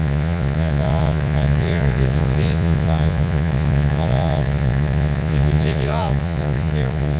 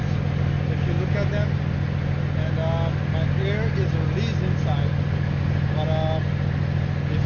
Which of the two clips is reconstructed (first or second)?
first